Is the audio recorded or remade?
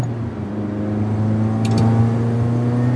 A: recorded